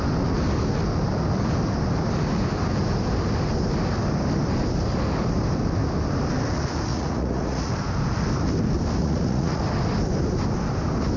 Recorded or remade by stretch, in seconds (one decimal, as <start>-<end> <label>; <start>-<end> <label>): 0.0-6.9 recorded; 6.9-7.7 remade; 7.7-9.0 recorded; 9.0-9.6 remade; 9.6-11.2 recorded